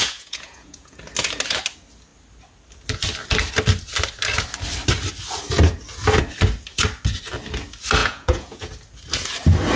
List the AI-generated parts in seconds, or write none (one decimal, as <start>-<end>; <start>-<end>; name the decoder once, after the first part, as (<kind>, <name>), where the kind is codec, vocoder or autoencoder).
0.0-1.0 (vocoder, Vocos); 8.0-8.7